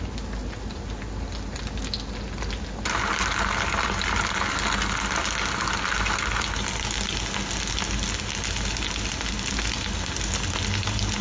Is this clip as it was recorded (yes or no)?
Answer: yes